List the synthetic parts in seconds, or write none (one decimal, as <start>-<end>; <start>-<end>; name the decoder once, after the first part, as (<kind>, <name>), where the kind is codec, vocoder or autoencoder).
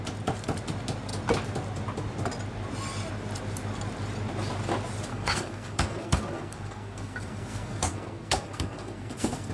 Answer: 5.1-9.5 (codec, SNAC)